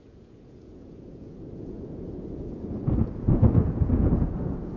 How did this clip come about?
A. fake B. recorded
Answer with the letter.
A